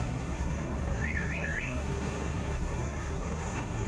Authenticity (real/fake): fake